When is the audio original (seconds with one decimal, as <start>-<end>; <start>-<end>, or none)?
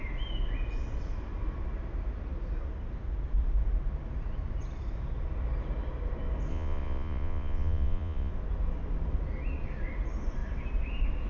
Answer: 0.0-6.5; 8.3-11.3